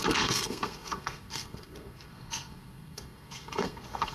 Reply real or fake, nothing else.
fake